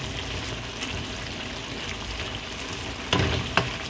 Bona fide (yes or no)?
yes